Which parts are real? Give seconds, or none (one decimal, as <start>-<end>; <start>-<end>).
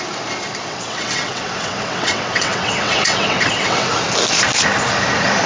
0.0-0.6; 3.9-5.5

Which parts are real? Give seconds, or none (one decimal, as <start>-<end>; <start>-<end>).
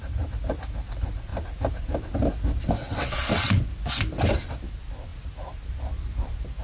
0.0-2.8; 3.6-6.6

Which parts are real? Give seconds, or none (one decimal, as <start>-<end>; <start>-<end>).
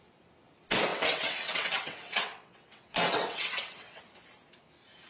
0.0-0.9; 4.0-5.1